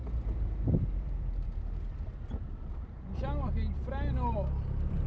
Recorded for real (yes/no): no